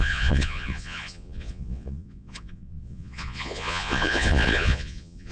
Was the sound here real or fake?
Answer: fake